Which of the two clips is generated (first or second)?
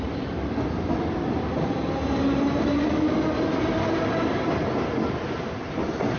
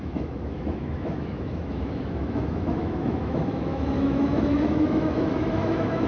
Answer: second